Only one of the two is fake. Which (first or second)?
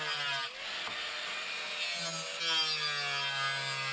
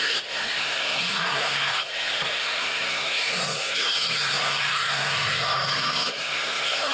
second